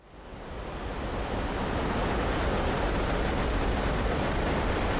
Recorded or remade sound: recorded